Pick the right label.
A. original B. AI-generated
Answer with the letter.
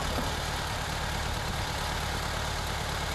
A